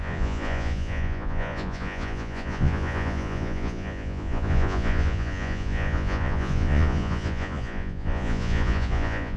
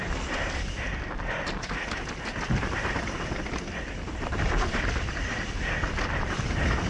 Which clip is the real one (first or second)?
second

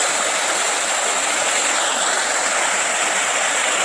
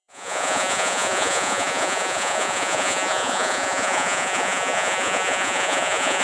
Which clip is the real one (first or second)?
first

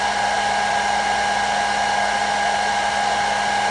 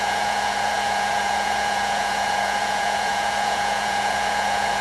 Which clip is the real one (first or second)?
first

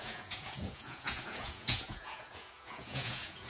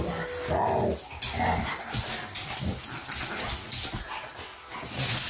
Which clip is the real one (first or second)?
second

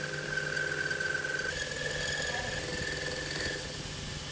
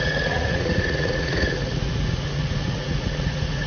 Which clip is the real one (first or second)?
first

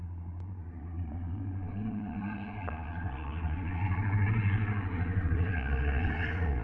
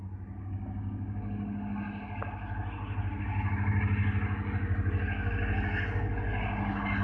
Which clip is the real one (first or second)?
second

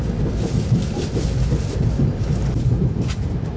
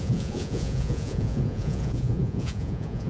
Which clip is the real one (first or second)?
first